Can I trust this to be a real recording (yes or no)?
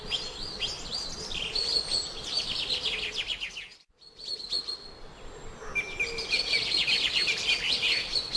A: yes